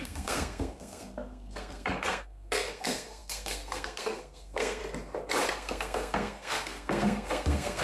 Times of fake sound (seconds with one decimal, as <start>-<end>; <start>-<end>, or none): 0.0-4.8; 5.5-7.8